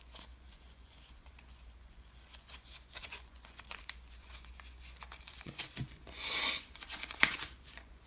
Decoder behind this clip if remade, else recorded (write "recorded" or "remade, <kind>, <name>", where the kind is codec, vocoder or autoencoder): remade, vocoder, Vocos